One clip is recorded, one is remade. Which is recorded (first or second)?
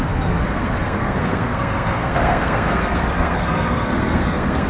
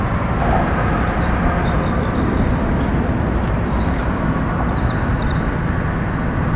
second